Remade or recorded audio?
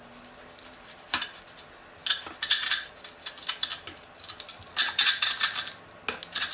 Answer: recorded